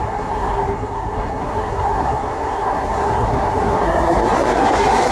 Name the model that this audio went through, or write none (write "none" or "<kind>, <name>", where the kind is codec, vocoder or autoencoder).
codec, SNAC